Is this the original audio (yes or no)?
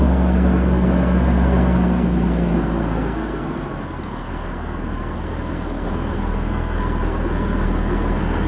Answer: no